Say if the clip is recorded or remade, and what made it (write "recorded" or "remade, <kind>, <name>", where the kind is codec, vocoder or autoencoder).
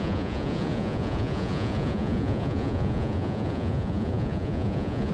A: remade, vocoder, Vocos